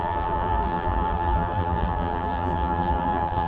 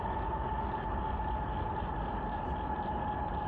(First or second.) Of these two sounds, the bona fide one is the second